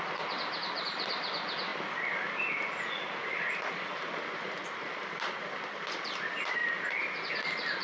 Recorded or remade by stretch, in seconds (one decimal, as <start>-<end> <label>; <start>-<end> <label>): 0.0-7.8 recorded